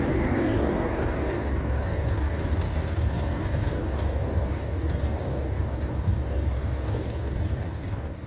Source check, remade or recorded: remade